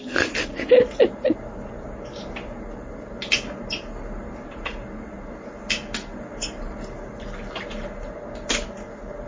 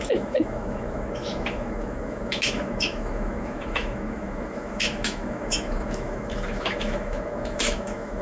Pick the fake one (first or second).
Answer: second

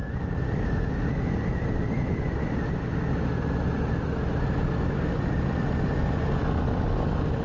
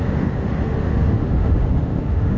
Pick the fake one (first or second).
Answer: second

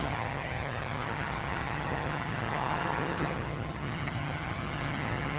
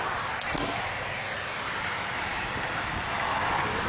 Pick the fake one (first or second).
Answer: first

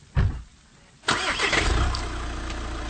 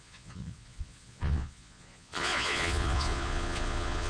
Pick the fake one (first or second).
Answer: second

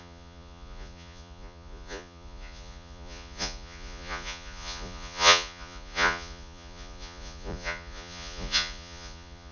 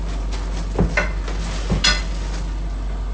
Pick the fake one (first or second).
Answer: first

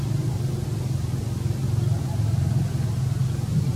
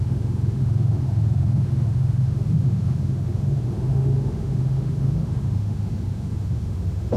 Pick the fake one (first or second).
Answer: second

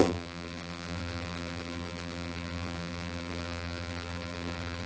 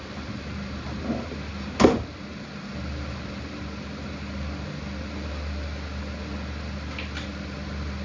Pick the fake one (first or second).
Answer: first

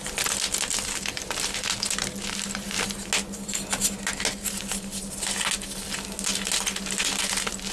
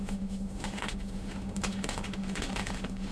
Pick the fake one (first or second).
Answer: second